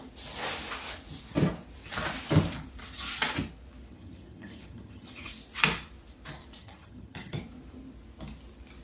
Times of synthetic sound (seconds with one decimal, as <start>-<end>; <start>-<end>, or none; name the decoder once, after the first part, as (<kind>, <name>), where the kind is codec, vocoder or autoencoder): 3.9-5.3 (vocoder, HiFi-GAN); 6.6-7.4